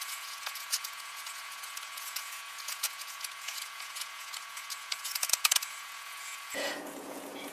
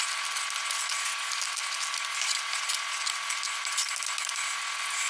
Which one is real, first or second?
second